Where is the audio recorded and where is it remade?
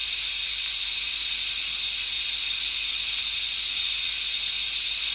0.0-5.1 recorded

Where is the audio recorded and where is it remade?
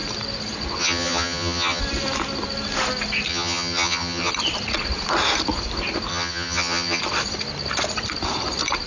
0.0-0.8 recorded; 0.8-1.8 remade; 1.8-3.3 recorded; 3.3-4.3 remade; 4.3-6.1 recorded; 6.1-7.0 remade; 7.0-8.9 recorded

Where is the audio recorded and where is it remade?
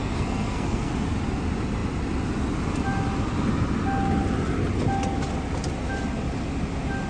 0.0-0.9 remade; 0.9-7.1 recorded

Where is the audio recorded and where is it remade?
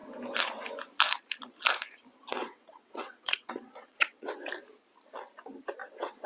0.0-2.4 recorded; 2.4-4.4 remade; 4.4-5.8 recorded; 5.8-6.3 remade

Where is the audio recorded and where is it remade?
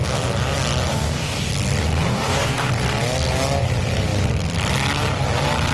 0.0-0.9 recorded; 0.9-1.5 remade; 1.5-2.1 recorded; 2.1-2.7 remade; 2.7-5.7 recorded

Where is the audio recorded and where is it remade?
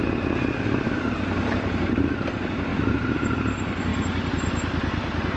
0.0-5.4 remade